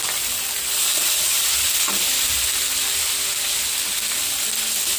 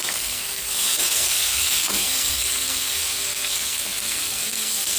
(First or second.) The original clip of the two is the first